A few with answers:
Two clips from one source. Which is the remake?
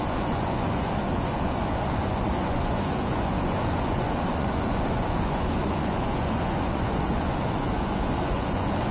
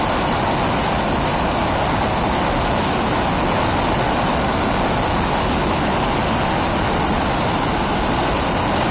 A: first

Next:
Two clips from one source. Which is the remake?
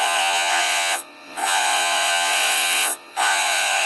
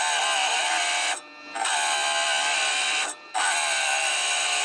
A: first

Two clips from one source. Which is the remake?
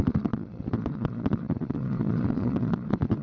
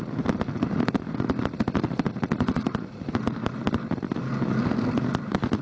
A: first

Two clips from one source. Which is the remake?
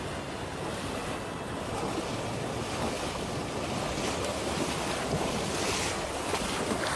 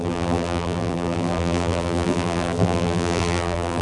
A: second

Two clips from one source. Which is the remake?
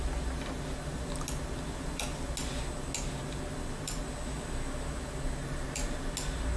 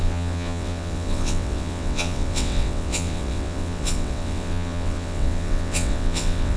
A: second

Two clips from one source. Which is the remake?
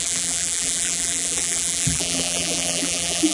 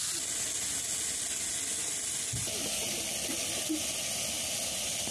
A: first